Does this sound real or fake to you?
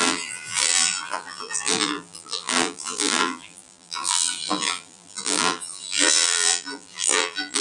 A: fake